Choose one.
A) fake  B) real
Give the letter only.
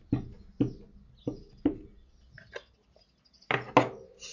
B